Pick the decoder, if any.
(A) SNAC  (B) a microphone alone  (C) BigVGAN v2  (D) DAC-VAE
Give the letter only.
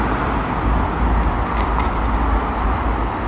B